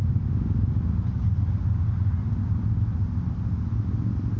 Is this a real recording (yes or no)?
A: yes